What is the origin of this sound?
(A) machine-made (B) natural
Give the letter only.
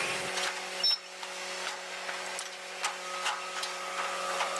B